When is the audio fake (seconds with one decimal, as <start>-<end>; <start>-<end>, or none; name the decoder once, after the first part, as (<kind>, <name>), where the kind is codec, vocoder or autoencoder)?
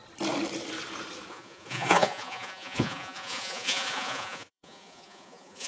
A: 1.3-5.7 (vocoder, Vocos)